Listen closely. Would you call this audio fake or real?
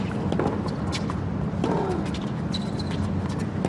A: real